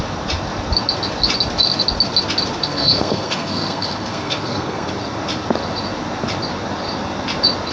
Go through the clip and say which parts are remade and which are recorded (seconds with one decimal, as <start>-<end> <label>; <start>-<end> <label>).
0.0-2.6 recorded; 2.6-4.9 remade; 4.9-7.7 recorded